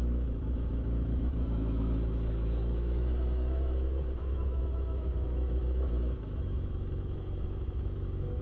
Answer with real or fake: fake